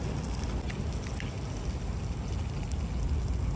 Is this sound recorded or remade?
recorded